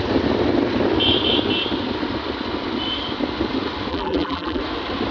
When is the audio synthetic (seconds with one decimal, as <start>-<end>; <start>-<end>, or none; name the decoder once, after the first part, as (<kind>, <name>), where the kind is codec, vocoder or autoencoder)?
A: 3.9-4.6 (vocoder, BigVGAN v2)